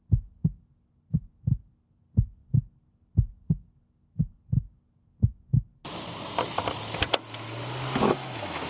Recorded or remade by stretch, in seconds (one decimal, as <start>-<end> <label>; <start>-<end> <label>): 0.0-5.8 remade; 5.8-8.1 recorded; 8.1-8.7 remade